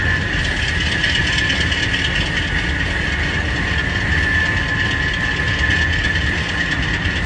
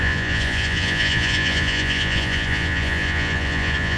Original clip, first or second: first